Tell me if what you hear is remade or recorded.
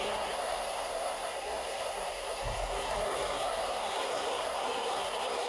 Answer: remade